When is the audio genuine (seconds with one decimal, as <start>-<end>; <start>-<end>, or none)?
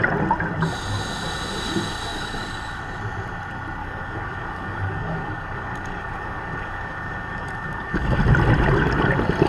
0.0-2.1; 2.6-3.8; 8.2-9.5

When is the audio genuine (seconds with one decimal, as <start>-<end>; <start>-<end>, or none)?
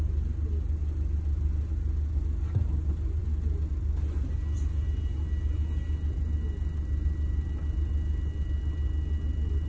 0.0-9.7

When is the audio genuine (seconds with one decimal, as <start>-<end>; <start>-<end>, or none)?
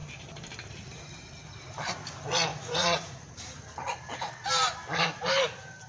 0.0-2.5; 3.3-5.9